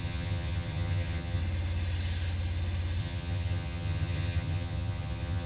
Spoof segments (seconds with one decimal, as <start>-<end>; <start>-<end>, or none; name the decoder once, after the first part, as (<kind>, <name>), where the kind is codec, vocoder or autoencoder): 0.0-1.4 (vocoder, HiFi-GAN); 3.0-5.5